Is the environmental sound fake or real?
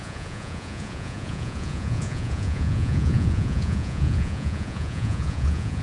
fake